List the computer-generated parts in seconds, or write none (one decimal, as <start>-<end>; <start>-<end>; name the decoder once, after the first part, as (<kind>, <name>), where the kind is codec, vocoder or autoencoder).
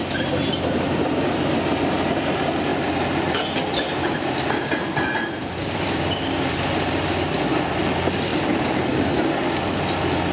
2.7-6.6 (vocoder, BigVGAN v2)